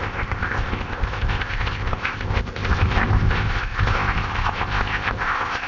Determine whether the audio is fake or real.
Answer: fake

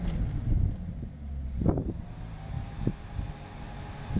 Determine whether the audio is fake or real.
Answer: real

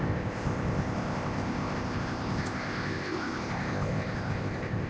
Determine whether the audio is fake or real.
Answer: fake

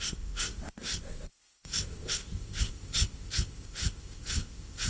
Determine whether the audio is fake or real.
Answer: fake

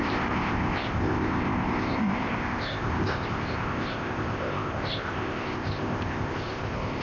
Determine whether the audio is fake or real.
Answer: fake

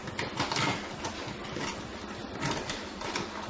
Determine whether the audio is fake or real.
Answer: real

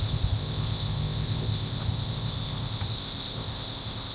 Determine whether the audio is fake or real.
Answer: fake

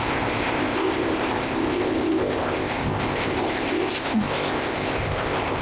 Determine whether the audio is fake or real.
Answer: fake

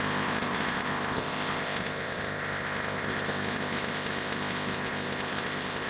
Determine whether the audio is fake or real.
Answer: fake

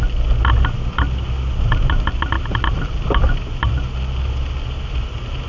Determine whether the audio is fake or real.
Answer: real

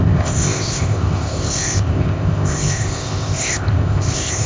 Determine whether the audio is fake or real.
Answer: fake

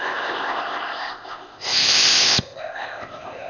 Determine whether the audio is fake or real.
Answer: fake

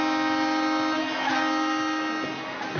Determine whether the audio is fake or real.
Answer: real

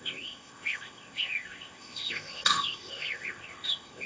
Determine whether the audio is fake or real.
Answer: fake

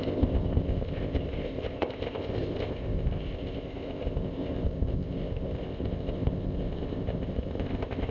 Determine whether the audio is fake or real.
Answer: fake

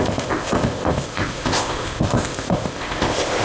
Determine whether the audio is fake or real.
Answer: fake